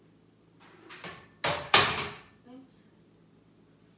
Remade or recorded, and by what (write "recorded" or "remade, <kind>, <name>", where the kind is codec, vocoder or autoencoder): recorded